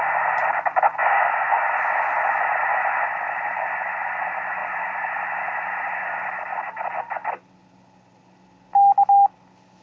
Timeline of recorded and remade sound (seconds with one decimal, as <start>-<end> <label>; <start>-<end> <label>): 0.0-9.8 recorded

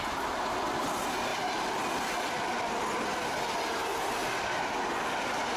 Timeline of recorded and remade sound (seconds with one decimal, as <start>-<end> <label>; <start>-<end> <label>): 0.0-5.6 recorded